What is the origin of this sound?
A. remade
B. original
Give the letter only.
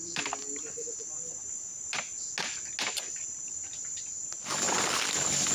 B